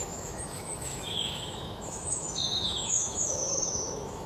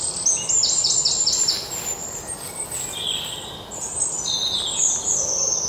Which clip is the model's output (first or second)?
first